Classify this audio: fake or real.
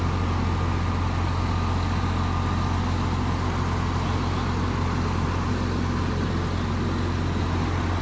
real